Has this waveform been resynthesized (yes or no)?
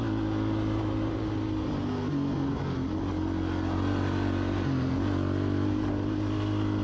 no